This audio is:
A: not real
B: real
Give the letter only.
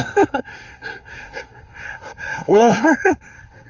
A